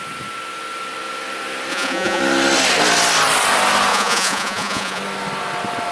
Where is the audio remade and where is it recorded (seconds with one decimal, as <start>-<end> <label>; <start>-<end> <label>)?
0.0-1.7 recorded; 1.7-2.2 remade; 2.2-3.9 recorded; 3.9-5.0 remade; 5.0-5.9 recorded